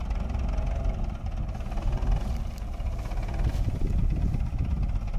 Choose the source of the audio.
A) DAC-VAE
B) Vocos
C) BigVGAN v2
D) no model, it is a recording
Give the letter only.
D